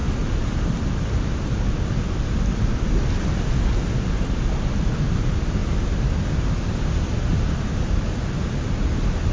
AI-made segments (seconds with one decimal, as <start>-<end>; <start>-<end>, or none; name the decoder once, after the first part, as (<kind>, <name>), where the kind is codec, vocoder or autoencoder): none